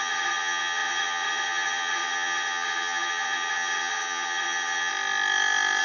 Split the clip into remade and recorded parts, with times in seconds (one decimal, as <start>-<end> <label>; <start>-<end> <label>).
0.0-4.9 remade; 4.9-5.8 recorded